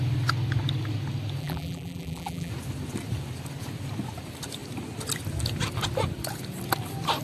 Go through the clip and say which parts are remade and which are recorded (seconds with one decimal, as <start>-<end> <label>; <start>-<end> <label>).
0.0-1.4 recorded; 1.4-2.5 remade; 2.5-7.2 recorded